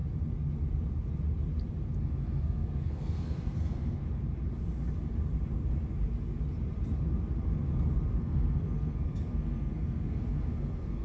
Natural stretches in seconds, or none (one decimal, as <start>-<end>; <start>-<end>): 0.0-2.0; 4.0-8.2